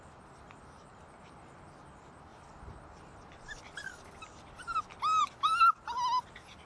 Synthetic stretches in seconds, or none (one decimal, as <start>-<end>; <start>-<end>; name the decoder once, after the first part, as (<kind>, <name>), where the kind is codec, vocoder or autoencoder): none